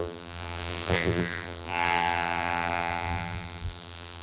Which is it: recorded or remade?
remade